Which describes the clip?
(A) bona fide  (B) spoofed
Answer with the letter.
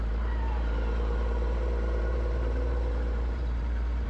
B